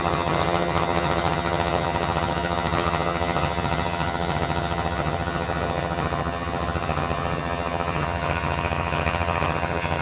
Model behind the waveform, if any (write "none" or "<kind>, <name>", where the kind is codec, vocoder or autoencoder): vocoder, HiFi-GAN